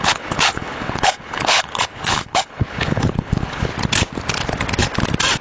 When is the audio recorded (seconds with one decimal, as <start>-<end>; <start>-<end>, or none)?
3.7-5.4